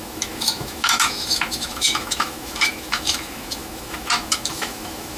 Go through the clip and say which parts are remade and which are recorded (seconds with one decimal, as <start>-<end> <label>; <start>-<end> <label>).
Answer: 0.0-5.2 remade